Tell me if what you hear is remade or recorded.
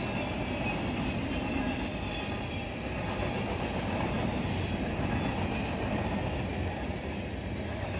recorded